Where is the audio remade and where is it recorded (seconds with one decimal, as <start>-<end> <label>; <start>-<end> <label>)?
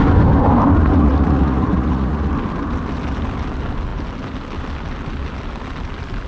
0.0-0.8 recorded; 0.8-2.3 remade; 2.3-6.3 recorded